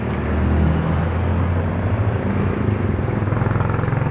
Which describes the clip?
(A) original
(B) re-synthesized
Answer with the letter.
A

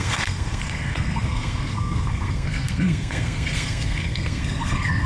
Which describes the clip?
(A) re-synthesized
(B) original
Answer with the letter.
A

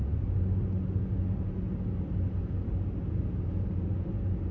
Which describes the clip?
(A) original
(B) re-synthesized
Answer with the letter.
A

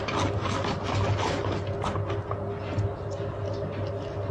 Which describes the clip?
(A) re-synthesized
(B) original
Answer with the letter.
B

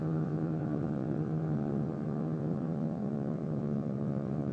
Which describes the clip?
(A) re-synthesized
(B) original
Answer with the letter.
A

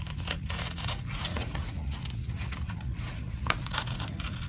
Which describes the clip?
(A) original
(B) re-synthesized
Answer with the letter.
B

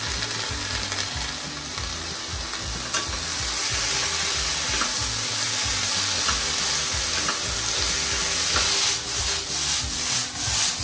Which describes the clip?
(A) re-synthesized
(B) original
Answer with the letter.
B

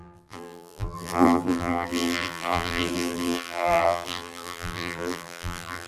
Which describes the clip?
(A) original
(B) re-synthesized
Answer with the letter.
B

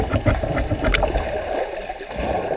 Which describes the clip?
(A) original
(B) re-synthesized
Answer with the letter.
B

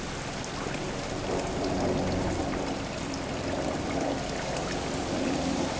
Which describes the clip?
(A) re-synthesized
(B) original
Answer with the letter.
A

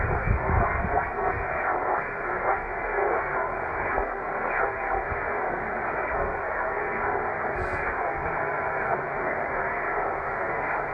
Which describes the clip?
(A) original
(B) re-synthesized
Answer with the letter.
B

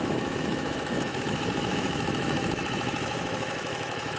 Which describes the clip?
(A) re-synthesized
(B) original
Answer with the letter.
A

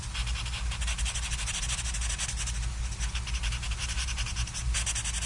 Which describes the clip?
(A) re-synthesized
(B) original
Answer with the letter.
B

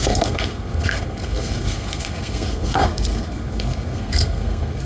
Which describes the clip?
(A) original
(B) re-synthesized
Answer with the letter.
B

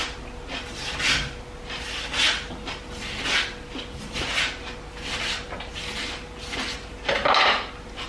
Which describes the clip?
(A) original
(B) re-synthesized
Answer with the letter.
A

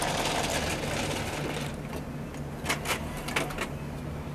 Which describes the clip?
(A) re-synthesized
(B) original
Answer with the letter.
B